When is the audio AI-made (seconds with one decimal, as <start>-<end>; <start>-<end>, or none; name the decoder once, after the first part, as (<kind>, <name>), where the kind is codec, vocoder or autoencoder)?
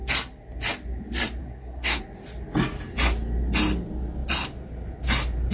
1.4-2.0 (codec, SNAC)